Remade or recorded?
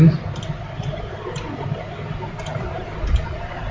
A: recorded